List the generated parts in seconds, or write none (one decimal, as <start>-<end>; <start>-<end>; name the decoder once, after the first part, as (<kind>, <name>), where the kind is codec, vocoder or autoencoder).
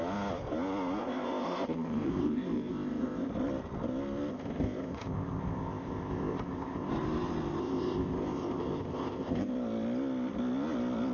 1.0-3.3 (codec, ZipCodec); 4.3-6.9; 7.6-9.5